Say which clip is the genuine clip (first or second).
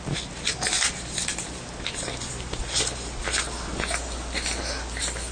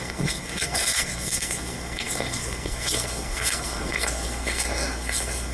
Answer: first